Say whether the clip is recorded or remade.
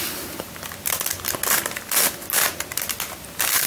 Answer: recorded